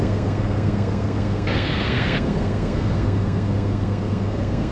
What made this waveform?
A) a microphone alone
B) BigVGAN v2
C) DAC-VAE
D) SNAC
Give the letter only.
D